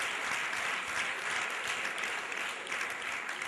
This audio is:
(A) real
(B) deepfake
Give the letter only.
A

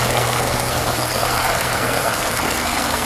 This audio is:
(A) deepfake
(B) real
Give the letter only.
A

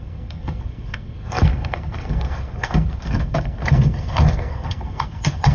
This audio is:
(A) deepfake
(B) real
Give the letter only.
A